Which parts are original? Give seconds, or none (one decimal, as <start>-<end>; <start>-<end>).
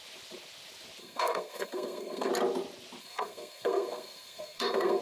0.0-1.0; 2.3-3.0